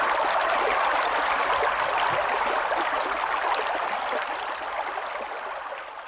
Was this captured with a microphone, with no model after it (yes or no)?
yes